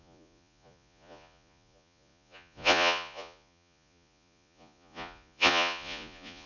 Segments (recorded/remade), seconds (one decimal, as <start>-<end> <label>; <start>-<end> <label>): 0.0-6.5 remade